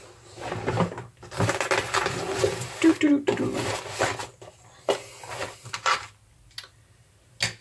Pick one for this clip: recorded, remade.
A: recorded